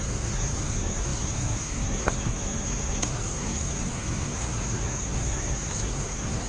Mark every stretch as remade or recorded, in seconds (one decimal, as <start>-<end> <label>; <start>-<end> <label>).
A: 0.0-6.5 remade